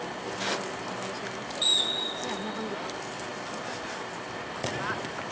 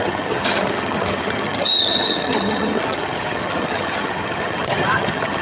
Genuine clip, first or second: first